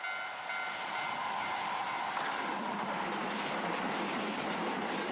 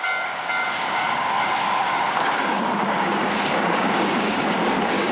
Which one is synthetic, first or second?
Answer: second